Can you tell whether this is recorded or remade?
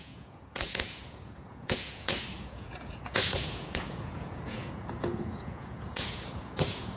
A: remade